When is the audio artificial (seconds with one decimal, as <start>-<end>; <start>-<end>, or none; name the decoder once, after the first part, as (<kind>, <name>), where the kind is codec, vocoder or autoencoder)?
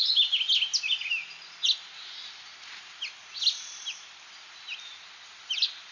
none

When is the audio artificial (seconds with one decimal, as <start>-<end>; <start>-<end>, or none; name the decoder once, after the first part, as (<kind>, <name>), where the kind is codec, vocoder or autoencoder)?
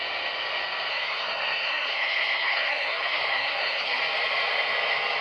0.9-4.0 (codec, SNAC)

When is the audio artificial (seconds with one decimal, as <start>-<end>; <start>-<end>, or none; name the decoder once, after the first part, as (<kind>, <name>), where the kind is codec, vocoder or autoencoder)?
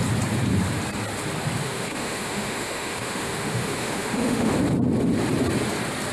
1.6-4.5 (autoencoder, DAC-VAE)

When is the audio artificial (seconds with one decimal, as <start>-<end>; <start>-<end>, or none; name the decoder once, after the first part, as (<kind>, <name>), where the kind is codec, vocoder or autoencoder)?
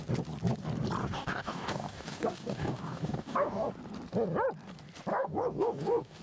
1.0-3.7 (codec, DAC); 5.1-6.2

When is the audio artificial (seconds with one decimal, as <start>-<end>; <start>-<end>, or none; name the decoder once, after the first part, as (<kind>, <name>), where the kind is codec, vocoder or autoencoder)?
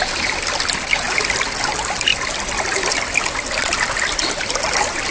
none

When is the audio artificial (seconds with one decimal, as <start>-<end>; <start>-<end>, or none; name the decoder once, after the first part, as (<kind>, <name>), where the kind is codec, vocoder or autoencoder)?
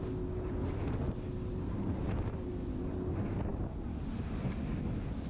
1.5-2.5 (vocoder, BigVGAN v2)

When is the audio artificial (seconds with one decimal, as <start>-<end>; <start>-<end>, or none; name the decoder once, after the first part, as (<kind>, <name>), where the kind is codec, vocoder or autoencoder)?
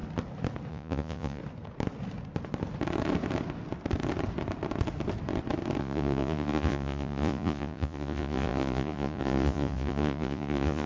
0.7-1.4 (vocoder, Vocos); 5.8-10.9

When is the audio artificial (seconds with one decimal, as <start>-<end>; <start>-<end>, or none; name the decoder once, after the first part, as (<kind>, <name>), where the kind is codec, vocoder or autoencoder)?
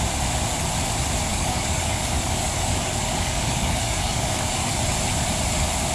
1.3-4.8 (codec, DAC)